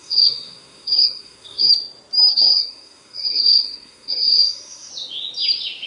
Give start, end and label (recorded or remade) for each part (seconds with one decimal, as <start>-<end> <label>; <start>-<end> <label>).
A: 0.0-1.7 remade; 1.7-2.3 recorded; 2.3-4.9 remade; 4.9-5.9 recorded